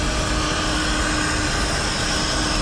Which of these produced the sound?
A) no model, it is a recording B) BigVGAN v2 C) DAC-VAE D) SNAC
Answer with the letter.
A